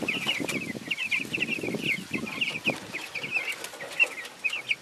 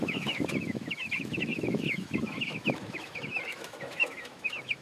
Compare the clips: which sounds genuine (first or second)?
first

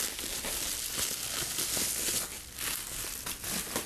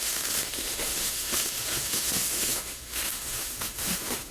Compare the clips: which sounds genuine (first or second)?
first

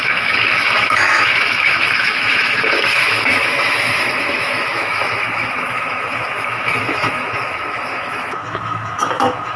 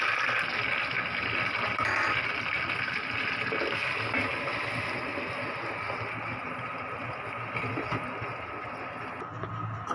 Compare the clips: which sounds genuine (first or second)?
second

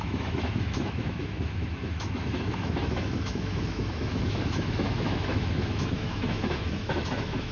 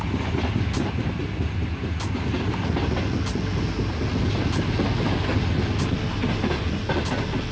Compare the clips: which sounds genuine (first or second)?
second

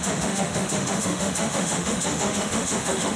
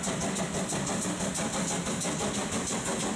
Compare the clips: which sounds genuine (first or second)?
second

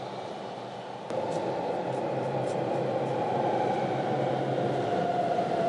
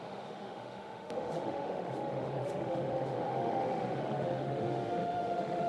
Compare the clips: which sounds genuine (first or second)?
first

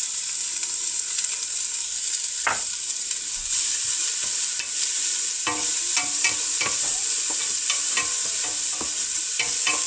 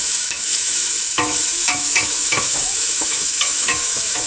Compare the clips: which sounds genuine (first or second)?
first